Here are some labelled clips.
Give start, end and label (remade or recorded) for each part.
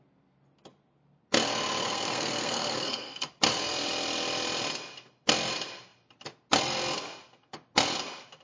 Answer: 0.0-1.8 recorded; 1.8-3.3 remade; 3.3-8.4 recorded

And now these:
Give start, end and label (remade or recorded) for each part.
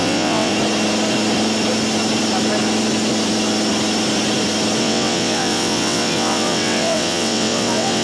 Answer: 0.0-0.5 remade; 0.5-4.8 recorded; 4.8-8.0 remade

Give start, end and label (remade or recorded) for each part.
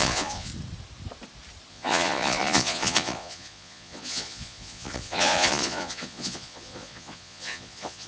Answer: 0.0-0.5 remade; 0.5-1.7 recorded; 1.7-8.1 remade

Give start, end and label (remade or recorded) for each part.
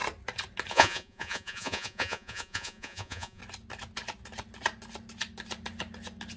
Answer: 0.0-0.7 recorded; 0.7-3.4 remade; 3.4-6.4 recorded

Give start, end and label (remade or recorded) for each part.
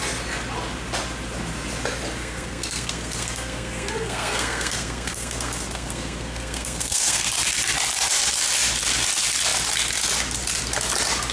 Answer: 0.0-2.2 recorded; 2.2-7.3 remade; 7.3-11.3 recorded